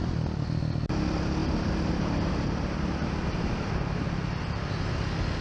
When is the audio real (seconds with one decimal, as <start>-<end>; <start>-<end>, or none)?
0.0-5.4